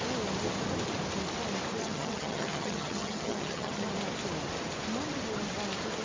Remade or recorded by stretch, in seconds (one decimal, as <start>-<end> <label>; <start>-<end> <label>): 0.0-1.8 recorded; 1.8-3.9 remade; 3.9-6.0 recorded